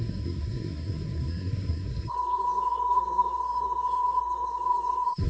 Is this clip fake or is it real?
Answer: fake